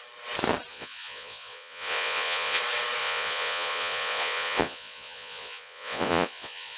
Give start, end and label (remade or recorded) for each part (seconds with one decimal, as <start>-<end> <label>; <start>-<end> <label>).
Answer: 0.0-0.7 recorded; 0.7-2.6 remade; 2.6-3.0 recorded; 3.0-6.8 remade